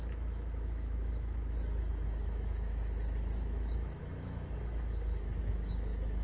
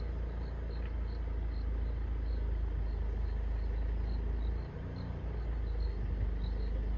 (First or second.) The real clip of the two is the second